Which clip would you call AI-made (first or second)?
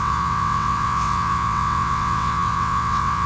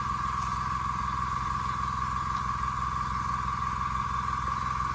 first